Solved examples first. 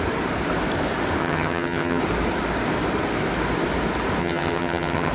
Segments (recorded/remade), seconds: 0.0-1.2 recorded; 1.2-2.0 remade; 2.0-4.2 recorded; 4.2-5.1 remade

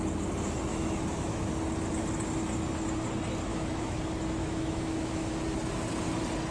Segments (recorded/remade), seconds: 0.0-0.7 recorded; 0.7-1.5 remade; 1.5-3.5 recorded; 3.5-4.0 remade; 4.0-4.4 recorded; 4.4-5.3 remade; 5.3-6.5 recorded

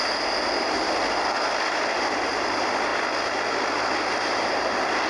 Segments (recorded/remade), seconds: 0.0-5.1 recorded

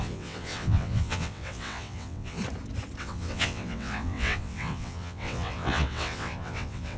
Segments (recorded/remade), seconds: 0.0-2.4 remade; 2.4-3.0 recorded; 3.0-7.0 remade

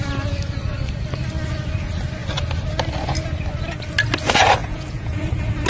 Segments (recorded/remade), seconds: 0.0-4.6 recorded; 4.6-5.2 remade; 5.2-5.7 recorded